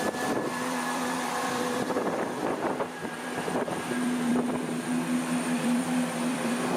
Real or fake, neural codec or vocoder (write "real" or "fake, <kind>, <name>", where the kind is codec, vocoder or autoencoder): fake, vocoder, BigVGAN v2